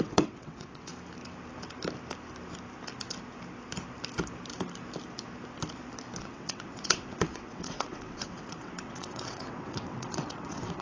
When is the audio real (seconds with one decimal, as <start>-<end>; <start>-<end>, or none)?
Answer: 0.9-6.2